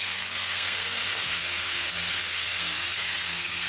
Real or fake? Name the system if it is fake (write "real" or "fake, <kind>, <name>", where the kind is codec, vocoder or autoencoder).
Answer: fake, codec, SNAC